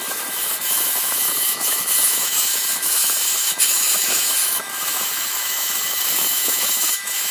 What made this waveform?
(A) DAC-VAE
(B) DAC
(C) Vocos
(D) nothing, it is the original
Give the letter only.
A